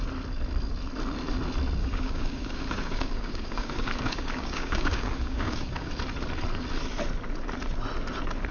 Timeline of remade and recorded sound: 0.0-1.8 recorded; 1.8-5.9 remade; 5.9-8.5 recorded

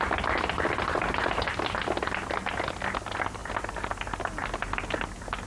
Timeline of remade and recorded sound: 0.0-5.5 recorded

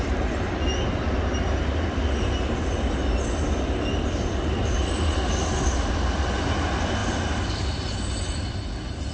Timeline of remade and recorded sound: 0.0-9.1 recorded

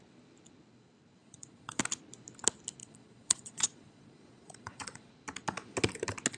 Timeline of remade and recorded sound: 0.0-1.2 recorded; 1.2-1.8 remade; 1.8-2.8 recorded; 2.8-5.1 remade; 5.1-6.4 recorded

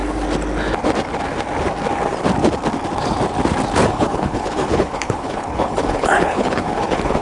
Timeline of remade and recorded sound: 0.0-3.8 recorded; 3.8-7.2 remade

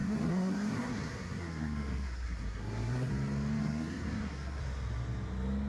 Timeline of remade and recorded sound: 0.0-3.1 remade; 3.1-3.6 recorded; 3.6-4.6 remade; 4.6-5.7 recorded

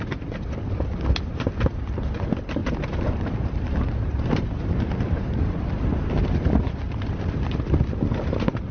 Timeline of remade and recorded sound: 0.0-2.6 recorded; 2.6-5.6 remade; 5.6-8.7 recorded